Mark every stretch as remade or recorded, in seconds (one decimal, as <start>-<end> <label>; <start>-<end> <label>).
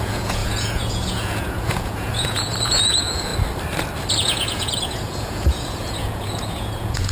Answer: 0.0-3.3 remade; 3.3-4.1 recorded; 4.1-7.1 remade